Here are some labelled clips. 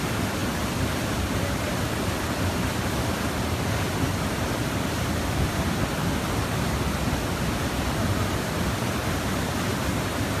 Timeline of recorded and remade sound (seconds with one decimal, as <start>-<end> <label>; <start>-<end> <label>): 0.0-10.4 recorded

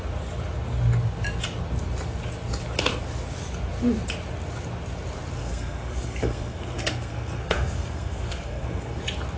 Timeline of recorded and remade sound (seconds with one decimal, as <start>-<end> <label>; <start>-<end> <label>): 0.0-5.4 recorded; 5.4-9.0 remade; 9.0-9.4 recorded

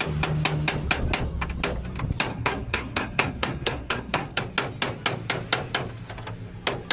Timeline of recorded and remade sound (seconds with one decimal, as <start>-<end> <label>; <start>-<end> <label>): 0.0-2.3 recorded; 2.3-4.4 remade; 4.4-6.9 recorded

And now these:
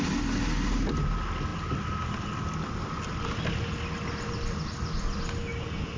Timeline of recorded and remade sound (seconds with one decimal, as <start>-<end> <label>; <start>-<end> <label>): 0.0-6.0 recorded